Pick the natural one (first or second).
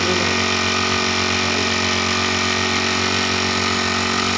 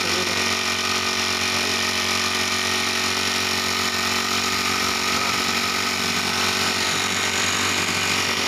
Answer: first